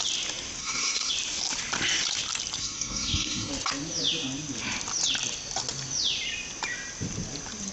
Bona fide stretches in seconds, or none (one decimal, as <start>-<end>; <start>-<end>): 0.0-0.6; 1.1-2.6; 3.5-7.7